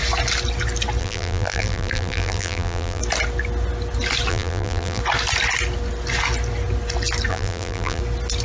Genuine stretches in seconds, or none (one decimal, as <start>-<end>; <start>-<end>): 0.0-1.0; 3.0-4.3; 5.0-7.3; 8.0-8.4